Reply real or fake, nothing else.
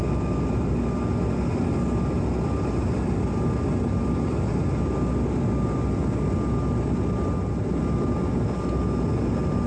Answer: real